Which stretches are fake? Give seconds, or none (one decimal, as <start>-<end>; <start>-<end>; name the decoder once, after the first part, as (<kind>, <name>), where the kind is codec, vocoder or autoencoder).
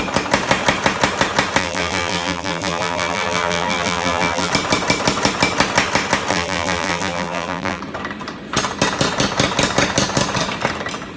1.6-4.5 (vocoder, BigVGAN v2); 6.3-7.8